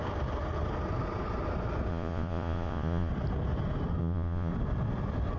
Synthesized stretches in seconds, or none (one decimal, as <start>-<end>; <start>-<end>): 1.9-3.1; 4.0-4.5